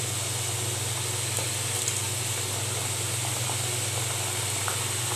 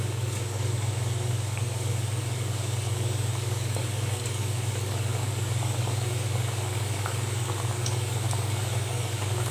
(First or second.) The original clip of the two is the first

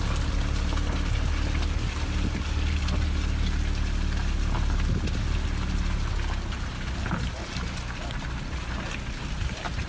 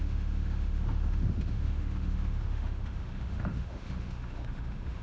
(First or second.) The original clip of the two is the first